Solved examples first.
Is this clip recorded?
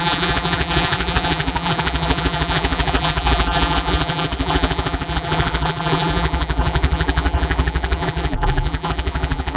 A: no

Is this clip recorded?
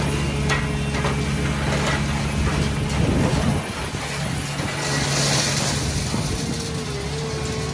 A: yes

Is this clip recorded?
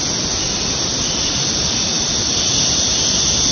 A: yes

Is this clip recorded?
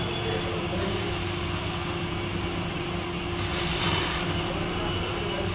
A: yes